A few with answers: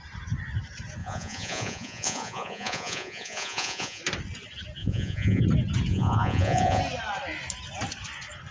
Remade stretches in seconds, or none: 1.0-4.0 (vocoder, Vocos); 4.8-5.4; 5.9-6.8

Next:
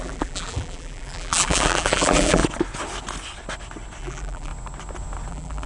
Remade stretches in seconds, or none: 0.0-2.4 (vocoder, BigVGAN v2); 4.0-4.5; 5.3-5.7

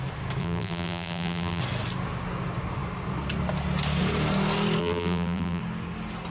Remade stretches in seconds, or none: 0.4-1.6 (vocoder, BigVGAN v2); 4.8-5.6

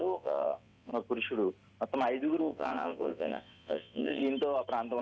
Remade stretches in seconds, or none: 0.0-0.9 (vocoder, WaveNeXt); 2.4-4.2